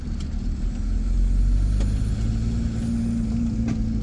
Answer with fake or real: real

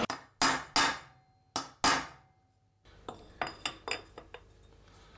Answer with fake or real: real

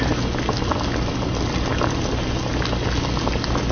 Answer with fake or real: real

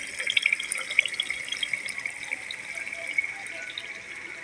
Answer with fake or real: real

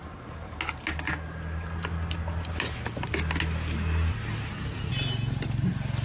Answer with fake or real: real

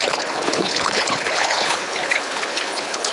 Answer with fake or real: fake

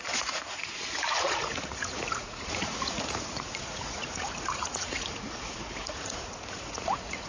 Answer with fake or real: fake